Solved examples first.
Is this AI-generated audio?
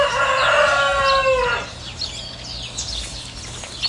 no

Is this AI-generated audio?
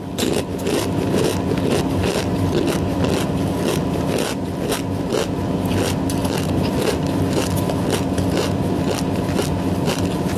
no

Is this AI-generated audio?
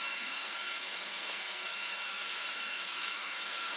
yes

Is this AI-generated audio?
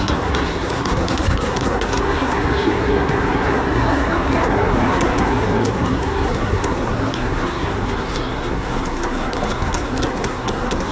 yes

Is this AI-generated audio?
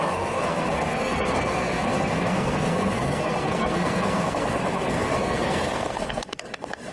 yes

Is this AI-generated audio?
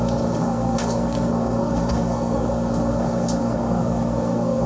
yes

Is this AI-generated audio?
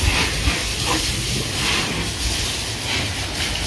no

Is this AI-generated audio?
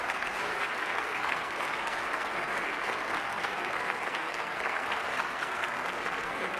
yes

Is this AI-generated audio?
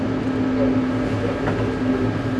no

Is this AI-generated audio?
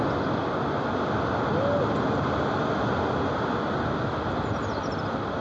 no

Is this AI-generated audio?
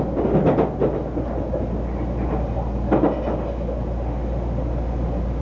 no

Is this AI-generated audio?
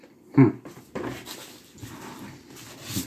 no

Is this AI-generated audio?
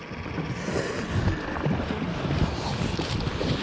no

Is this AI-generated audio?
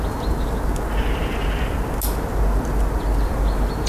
no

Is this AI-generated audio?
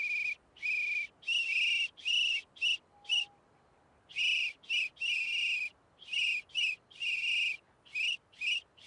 no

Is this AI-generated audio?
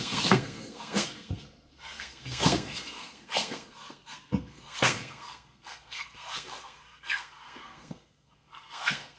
yes